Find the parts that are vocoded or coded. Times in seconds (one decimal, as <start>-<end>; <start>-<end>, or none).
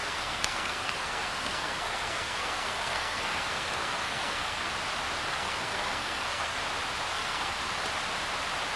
0.0-4.7; 5.3-6.6; 7.1-7.6